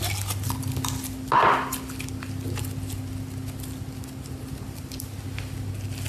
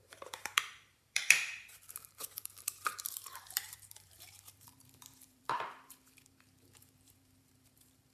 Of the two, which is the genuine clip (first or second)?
first